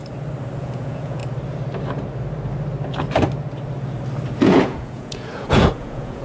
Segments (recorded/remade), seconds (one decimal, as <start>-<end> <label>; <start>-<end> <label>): 0.0-0.6 recorded; 0.6-1.2 remade; 1.2-4.4 recorded; 4.4-6.2 remade